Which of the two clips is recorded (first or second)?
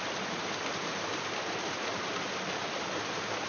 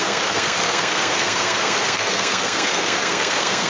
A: first